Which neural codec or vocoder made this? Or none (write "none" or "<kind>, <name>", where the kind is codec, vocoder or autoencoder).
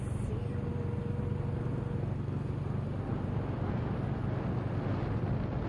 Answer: none